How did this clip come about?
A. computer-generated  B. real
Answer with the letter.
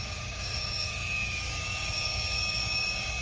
A